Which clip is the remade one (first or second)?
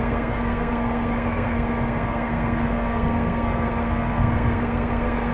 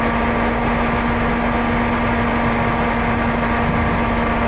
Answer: first